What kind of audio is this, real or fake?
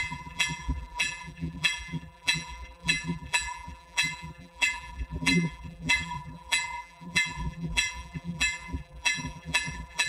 fake